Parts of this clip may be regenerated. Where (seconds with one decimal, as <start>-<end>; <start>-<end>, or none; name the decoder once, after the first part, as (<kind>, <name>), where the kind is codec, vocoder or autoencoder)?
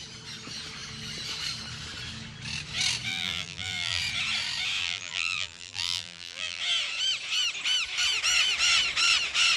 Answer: 3.1-4.0 (vocoder, BigVGAN v2); 4.8-6.6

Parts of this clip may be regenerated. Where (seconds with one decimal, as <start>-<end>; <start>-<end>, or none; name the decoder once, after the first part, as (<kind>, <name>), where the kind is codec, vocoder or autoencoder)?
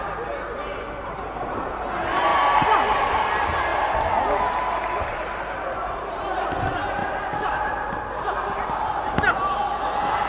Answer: 7.0-7.7 (vocoder, BigVGAN v2)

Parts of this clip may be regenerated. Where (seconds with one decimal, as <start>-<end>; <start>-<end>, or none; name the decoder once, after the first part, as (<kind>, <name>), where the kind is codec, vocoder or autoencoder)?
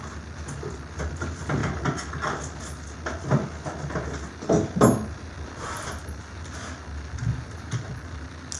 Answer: 7.2-7.9 (vocoder, BigVGAN v2)